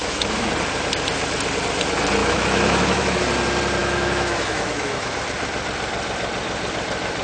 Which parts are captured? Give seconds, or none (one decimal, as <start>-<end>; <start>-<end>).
0.5-2.2; 3.2-3.8; 5.1-7.2